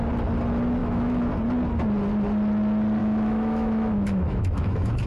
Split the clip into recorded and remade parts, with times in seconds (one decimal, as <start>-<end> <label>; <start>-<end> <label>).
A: 0.0-0.8 recorded; 0.8-1.3 remade; 1.3-3.0 recorded; 3.0-5.1 remade